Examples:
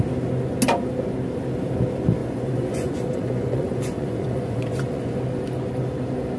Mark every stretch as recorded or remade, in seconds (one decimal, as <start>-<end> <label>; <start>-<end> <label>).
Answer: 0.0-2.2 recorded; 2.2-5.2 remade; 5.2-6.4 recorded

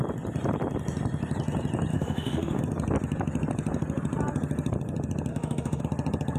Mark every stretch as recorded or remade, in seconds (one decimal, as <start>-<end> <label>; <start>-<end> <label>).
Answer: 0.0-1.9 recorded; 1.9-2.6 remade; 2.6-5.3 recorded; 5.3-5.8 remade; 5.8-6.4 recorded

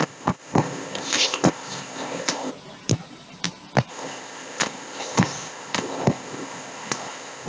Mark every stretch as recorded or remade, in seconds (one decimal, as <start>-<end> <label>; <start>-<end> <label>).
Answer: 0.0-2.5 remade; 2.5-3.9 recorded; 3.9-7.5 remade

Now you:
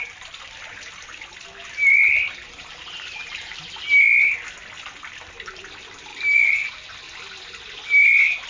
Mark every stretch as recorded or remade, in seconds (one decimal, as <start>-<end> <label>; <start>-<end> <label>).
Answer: 0.0-2.4 recorded; 2.4-3.6 remade; 3.6-6.1 recorded; 6.1-6.9 remade; 6.9-8.5 recorded